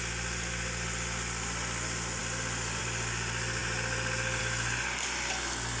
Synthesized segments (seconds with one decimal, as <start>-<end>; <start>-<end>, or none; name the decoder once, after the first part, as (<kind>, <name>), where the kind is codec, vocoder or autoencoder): none